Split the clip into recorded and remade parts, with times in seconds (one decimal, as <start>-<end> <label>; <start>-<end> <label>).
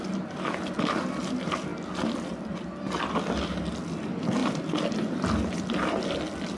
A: 0.0-6.6 recorded